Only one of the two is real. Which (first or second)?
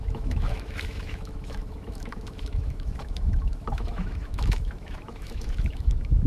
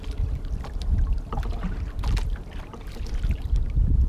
second